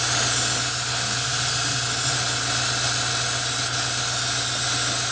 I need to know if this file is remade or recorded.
recorded